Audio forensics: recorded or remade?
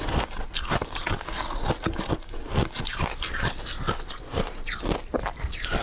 recorded